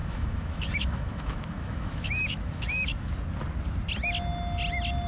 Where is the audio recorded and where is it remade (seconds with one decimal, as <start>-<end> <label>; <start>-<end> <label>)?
0.0-3.1 remade; 3.1-5.1 recorded